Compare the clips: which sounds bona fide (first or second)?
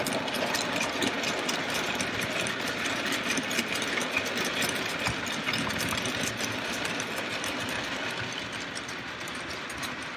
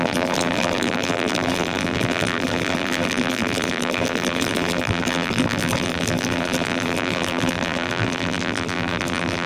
first